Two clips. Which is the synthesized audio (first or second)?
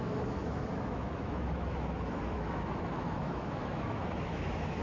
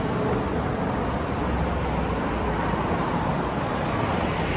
first